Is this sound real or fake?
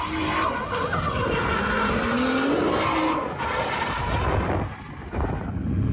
real